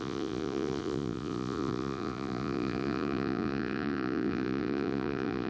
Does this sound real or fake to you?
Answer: fake